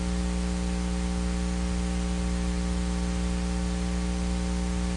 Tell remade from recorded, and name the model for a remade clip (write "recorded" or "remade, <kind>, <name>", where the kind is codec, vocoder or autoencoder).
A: recorded